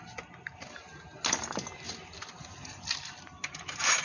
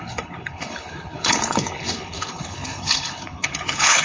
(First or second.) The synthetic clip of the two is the second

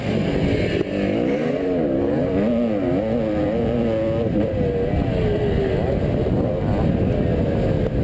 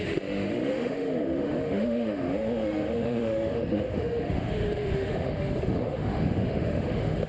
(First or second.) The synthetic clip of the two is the second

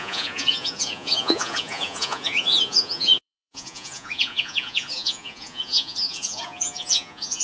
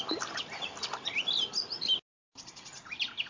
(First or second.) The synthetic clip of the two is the first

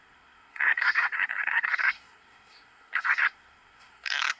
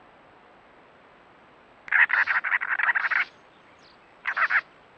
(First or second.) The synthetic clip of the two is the first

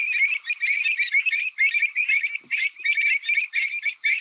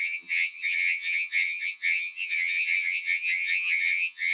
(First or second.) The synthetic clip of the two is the second